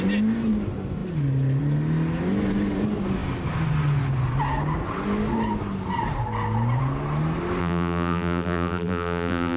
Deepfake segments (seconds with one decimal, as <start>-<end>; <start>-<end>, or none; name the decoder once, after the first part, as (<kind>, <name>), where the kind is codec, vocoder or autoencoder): 7.6-9.6 (vocoder, BigVGAN v2)